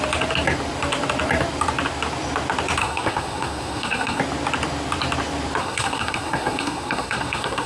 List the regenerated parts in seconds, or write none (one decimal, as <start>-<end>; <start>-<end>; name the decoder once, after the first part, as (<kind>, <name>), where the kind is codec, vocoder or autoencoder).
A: 2.8-4.2 (codec, SNAC); 5.6-7.7